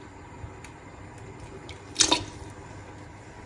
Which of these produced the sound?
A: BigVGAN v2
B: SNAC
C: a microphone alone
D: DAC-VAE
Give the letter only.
C